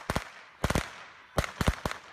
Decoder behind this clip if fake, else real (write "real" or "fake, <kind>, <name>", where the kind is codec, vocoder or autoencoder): real